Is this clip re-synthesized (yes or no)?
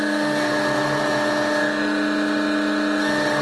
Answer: no